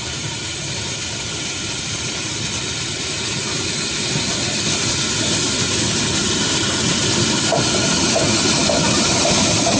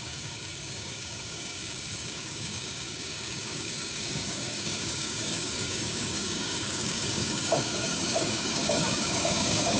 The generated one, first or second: second